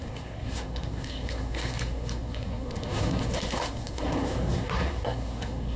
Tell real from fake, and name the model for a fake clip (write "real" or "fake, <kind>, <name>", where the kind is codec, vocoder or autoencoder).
fake, codec, SNAC